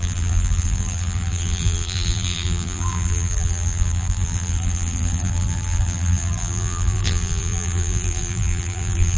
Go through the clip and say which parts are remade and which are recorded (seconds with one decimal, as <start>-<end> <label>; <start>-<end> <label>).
0.0-9.2 remade